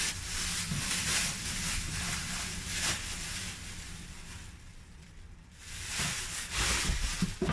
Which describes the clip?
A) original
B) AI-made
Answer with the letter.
A